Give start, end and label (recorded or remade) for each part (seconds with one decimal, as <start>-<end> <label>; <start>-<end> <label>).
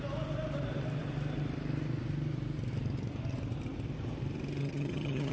0.0-4.6 recorded; 4.6-5.3 remade